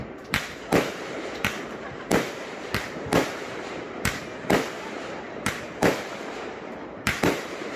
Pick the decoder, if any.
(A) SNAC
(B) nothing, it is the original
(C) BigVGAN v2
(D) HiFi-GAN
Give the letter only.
C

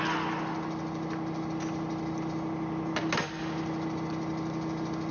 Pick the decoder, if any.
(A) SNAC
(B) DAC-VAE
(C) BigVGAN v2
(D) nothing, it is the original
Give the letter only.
D